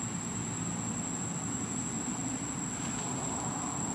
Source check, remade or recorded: recorded